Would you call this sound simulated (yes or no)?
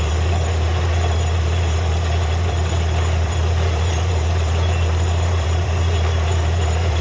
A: yes